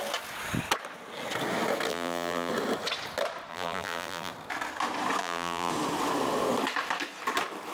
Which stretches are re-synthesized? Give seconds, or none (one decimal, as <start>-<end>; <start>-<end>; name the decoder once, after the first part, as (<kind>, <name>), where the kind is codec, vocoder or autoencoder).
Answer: 1.9-2.5 (vocoder, BigVGAN v2); 3.5-4.3; 5.2-5.7